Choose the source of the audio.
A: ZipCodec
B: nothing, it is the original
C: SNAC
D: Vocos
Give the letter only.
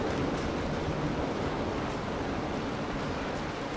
B